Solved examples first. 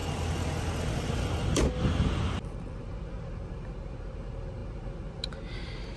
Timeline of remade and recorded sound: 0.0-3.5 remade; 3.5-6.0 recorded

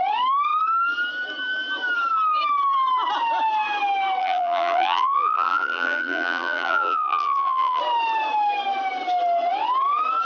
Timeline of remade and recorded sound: 0.0-4.2 recorded; 4.2-7.8 remade; 7.8-10.2 recorded

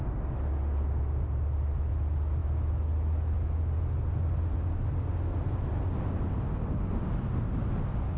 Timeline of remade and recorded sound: 0.0-8.2 recorded